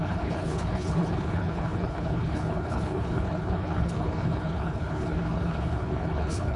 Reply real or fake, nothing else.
fake